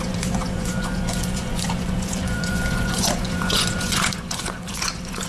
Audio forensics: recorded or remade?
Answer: remade